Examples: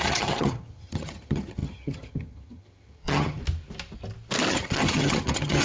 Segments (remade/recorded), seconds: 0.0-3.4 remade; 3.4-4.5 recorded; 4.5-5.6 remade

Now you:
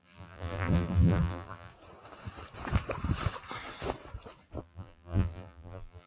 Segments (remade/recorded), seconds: 0.0-1.7 remade; 1.7-4.6 recorded; 4.6-6.1 remade

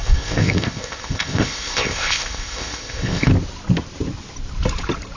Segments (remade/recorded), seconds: 0.0-3.3 remade; 3.3-5.2 recorded